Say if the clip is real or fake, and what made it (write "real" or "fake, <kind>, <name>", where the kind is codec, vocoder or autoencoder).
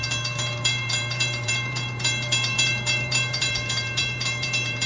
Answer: fake, vocoder, BigVGAN v2